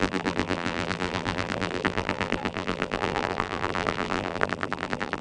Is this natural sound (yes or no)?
no